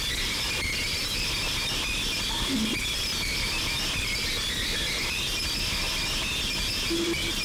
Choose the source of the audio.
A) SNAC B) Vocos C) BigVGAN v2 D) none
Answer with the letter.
C